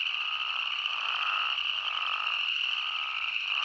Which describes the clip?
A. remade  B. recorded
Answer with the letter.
B